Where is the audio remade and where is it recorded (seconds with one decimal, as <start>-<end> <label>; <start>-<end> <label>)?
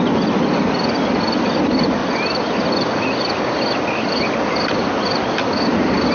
0.0-6.1 recorded